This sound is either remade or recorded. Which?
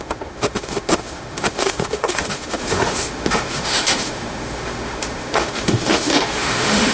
remade